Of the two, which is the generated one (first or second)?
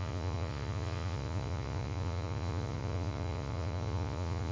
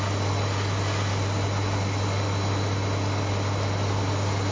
first